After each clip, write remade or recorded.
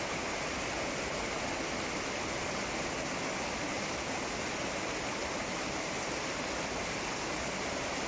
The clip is recorded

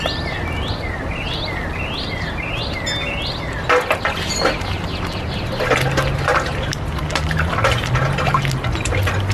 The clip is recorded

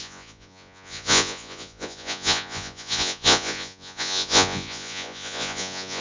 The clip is remade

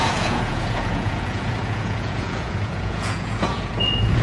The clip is remade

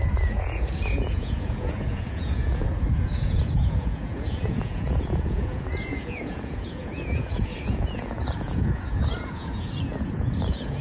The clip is remade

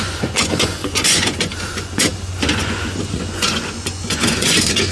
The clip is remade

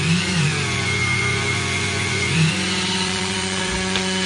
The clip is remade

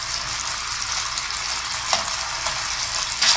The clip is recorded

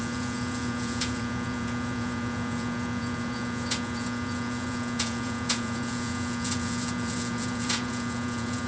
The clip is remade